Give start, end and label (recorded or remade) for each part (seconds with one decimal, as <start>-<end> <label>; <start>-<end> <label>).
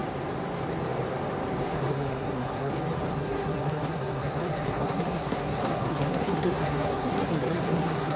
0.0-1.6 recorded; 1.6-2.7 remade; 2.7-3.1 recorded; 3.1-8.2 remade